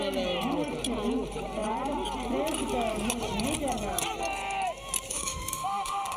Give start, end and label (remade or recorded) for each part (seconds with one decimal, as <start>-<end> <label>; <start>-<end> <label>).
0.0-5.1 recorded; 5.1-6.2 remade